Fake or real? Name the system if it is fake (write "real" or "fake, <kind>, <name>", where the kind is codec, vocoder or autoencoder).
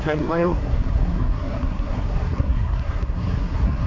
fake, codec, SNAC